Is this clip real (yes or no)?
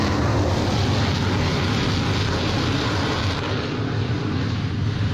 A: yes